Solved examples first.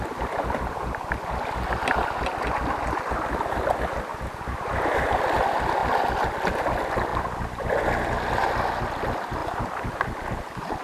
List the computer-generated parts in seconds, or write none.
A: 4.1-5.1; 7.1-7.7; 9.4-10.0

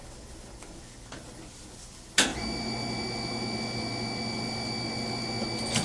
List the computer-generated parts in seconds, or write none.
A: none

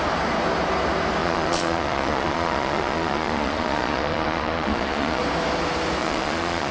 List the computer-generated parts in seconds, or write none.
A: 1.2-5.2; 6.0-6.7

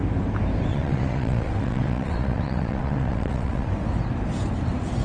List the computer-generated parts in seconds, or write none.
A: 0.7-3.7

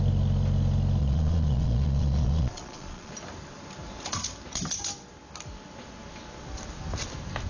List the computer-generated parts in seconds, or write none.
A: 1.0-3.1

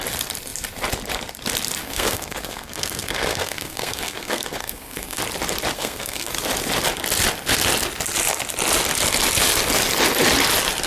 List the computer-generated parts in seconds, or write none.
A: 1.8-5.2; 5.7-6.3